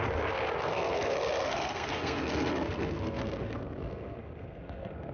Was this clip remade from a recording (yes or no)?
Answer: yes